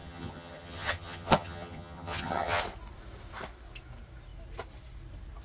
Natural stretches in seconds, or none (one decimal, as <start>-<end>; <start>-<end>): 2.6-5.4